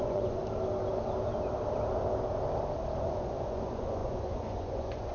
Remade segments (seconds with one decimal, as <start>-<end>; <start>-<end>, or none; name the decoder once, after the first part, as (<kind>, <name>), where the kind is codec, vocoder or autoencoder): 0.0-0.4 (vocoder, Vocos); 3.1-5.1

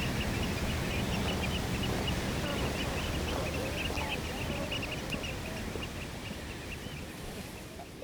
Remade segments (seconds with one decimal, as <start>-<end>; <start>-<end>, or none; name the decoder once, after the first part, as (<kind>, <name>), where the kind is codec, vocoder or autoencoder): none

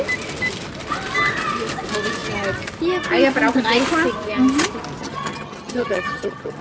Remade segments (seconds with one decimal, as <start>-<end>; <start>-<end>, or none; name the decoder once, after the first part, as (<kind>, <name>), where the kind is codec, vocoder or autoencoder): 5.0-6.6 (vocoder, HiFi-GAN)

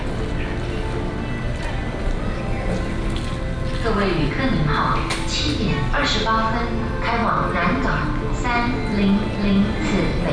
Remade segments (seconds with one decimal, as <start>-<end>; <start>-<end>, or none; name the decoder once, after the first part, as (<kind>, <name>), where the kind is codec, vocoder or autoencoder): none

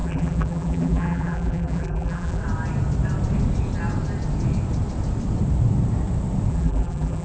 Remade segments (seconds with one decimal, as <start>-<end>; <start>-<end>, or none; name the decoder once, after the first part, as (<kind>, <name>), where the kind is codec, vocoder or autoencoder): 0.0-2.4 (vocoder, BigVGAN v2); 6.5-7.2

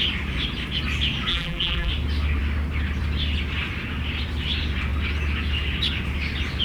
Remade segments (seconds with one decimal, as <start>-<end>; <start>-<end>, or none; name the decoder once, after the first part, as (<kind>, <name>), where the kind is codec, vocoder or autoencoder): 1.3-1.9 (vocoder, BigVGAN v2)

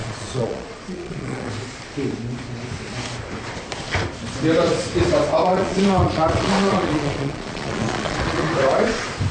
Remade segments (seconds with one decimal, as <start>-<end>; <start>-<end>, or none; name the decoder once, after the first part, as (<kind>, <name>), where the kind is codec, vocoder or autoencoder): 0.0-1.5 (vocoder, Vocos); 5.5-8.5

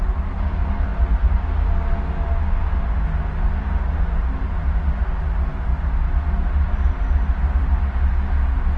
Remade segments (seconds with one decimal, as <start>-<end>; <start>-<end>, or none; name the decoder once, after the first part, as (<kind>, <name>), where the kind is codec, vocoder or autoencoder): none